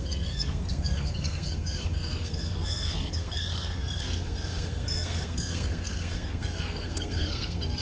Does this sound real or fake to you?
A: fake